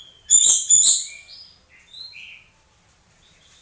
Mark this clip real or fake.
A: real